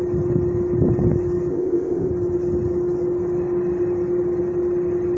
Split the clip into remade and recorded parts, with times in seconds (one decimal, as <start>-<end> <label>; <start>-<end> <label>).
0.0-1.5 recorded; 1.5-2.1 remade; 2.1-5.2 recorded